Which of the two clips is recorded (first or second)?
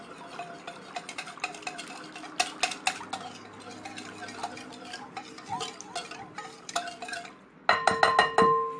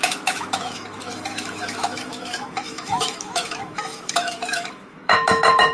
first